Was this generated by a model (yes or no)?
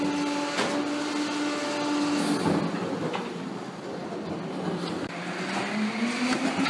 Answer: no